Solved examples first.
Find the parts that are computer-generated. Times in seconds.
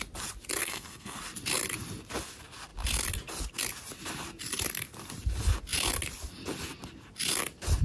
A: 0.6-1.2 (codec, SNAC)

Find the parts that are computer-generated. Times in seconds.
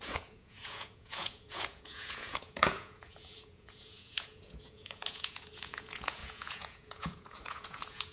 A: 0.0-8.1 (vocoder, Vocos)